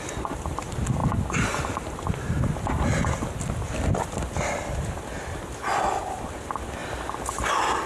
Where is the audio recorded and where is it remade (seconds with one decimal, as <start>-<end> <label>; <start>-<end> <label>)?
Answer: 0.0-7.9 recorded